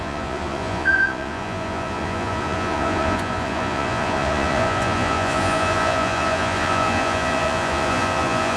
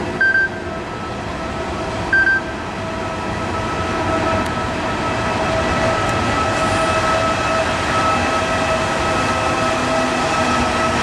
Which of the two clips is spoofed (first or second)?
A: first